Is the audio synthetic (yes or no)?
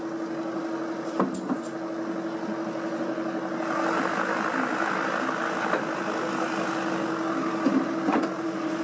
no